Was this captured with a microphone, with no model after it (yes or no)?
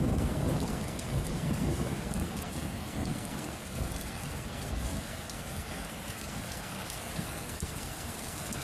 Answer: no